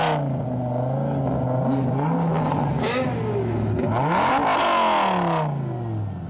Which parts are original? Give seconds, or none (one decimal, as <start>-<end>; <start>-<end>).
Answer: 0.0-6.3